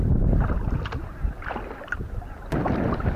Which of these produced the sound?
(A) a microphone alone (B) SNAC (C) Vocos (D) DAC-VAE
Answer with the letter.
A